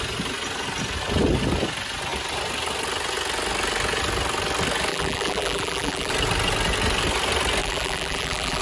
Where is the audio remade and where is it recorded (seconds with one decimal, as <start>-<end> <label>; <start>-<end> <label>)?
0.0-4.9 recorded; 4.9-6.1 remade; 6.1-7.6 recorded; 7.6-8.6 remade